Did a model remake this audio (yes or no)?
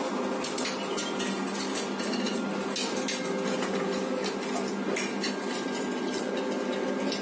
no